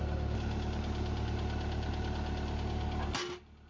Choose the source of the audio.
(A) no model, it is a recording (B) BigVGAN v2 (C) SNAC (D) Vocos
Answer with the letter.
A